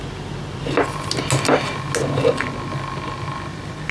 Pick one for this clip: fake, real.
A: real